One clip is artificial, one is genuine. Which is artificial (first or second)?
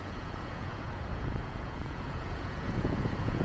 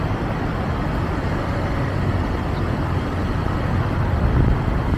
first